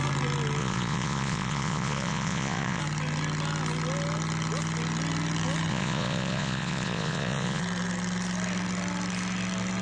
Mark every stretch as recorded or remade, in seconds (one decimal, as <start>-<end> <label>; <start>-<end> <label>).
0.0-0.6 recorded; 0.6-2.8 remade; 2.8-5.7 recorded; 5.7-7.6 remade; 7.6-9.8 recorded